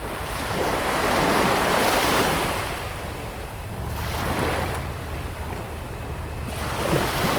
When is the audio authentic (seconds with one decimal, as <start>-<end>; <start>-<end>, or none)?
0.7-1.3; 3.0-7.4